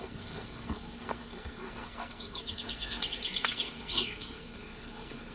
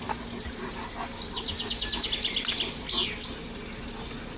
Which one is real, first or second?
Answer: second